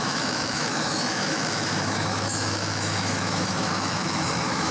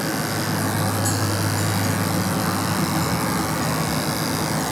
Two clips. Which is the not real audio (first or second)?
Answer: first